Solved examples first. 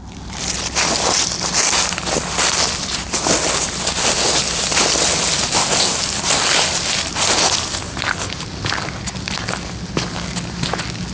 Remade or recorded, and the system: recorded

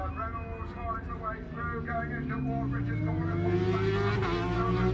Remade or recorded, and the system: recorded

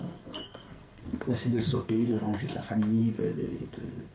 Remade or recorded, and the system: remade, codec, SNAC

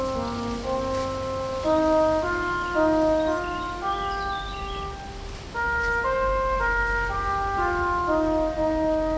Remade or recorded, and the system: recorded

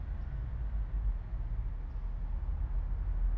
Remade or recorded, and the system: recorded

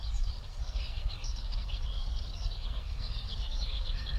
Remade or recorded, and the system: remade, codec, SNAC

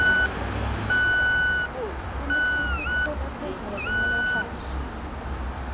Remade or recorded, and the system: recorded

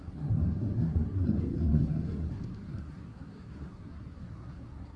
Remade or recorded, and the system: remade, codec, SNAC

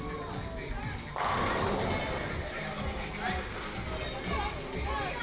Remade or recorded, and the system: recorded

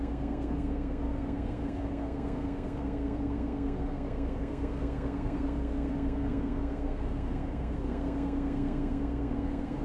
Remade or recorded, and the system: remade, codec, SNAC